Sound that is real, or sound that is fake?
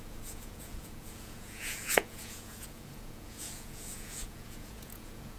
fake